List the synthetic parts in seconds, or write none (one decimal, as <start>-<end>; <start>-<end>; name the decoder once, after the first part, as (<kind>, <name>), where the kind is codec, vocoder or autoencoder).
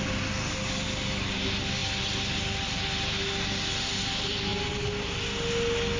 none